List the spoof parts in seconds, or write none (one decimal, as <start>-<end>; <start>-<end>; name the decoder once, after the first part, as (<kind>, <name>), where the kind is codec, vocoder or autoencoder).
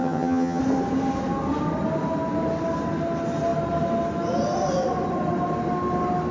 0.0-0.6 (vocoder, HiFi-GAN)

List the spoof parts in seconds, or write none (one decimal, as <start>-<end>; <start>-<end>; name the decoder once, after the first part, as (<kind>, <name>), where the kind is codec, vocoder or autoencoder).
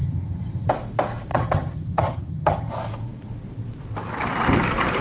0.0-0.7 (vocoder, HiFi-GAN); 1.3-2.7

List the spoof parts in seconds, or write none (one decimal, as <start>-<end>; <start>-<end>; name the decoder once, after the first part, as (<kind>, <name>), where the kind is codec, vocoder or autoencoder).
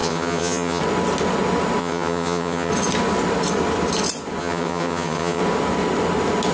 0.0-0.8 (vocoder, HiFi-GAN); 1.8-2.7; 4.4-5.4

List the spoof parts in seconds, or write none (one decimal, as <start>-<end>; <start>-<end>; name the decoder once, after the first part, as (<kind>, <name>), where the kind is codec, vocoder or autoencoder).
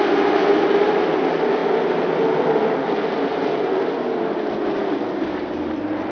none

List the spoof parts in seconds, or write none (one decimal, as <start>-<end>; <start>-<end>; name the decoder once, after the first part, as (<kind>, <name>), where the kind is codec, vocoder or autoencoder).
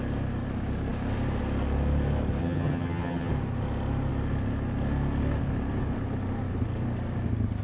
2.4-3.3 (vocoder, HiFi-GAN)